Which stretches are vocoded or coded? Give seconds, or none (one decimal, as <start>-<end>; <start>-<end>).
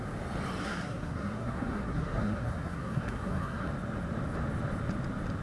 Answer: 0.6-3.7